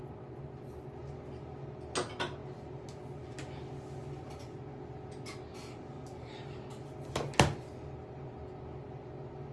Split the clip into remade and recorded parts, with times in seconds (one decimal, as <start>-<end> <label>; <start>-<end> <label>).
0.0-9.5 recorded